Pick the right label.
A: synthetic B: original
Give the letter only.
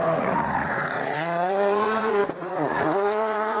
A